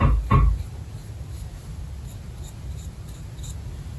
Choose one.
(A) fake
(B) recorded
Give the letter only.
B